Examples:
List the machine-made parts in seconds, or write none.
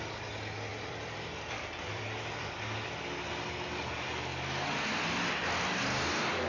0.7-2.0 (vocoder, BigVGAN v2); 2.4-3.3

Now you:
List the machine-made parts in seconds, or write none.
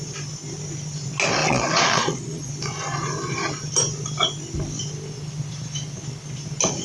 1.4-2.5 (vocoder, Vocos)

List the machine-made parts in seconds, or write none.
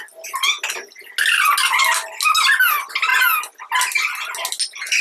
none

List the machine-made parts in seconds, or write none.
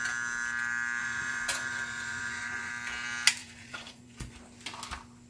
1.0-2.7 (vocoder, Vocos); 3.4-4.3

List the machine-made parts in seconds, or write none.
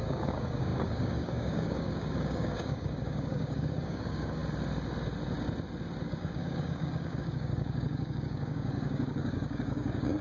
0.0-4.4 (codec, DAC); 6.0-10.2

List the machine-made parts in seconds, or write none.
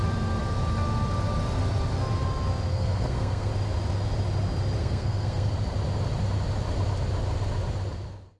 2.7-3.5 (codec, SNAC); 4.8-5.5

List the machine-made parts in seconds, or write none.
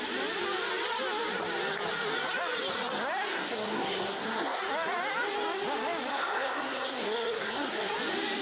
3.3-4.6 (codec, SNAC); 6.1-7.9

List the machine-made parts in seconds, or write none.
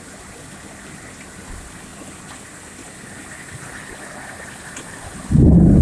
none